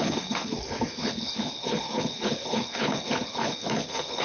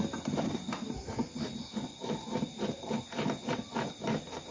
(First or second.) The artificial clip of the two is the first